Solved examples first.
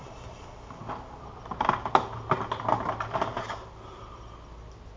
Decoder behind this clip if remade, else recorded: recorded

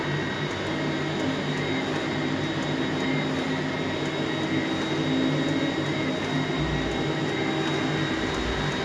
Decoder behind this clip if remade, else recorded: recorded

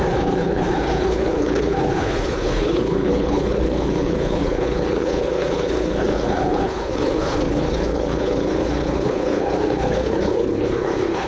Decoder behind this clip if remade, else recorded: remade, codec, HILCodec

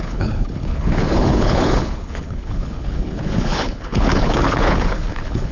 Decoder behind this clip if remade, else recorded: remade, codec, HILCodec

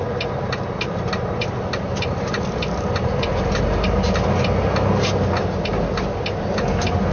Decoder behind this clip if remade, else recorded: recorded